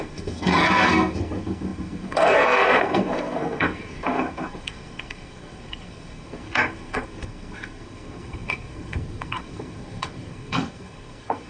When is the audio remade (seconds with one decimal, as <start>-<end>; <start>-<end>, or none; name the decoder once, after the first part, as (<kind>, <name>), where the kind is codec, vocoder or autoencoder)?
0.0-11.5 (codec, SNAC)